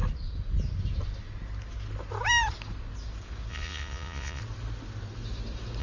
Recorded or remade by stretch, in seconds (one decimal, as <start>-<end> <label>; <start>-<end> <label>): 0.0-3.5 recorded; 3.5-4.4 remade; 4.4-5.8 recorded